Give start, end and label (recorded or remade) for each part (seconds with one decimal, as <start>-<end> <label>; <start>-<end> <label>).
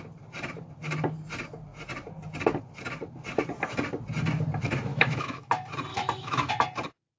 0.0-4.9 recorded; 4.9-5.5 remade; 5.5-5.9 recorded; 5.9-6.5 remade; 6.5-7.2 recorded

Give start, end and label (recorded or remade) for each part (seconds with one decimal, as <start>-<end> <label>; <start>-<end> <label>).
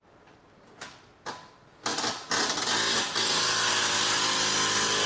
0.0-5.1 recorded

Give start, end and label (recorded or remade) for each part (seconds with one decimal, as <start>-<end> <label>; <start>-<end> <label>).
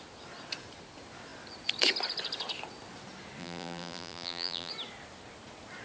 0.0-3.4 recorded; 3.4-4.7 remade; 4.7-5.8 recorded